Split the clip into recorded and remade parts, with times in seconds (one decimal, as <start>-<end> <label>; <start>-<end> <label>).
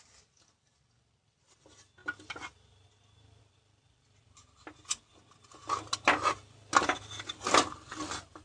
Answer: 0.0-8.4 recorded